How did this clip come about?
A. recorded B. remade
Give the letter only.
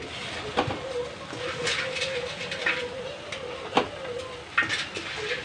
A